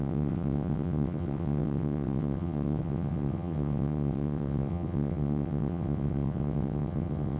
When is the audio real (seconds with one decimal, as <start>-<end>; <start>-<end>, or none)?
none